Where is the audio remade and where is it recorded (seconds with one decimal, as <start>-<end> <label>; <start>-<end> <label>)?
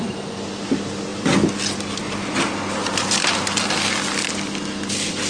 0.0-5.3 recorded